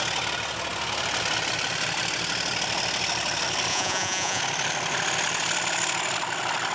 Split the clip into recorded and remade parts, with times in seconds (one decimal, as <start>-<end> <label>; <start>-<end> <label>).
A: 0.0-3.7 recorded; 3.7-4.4 remade; 4.4-6.7 recorded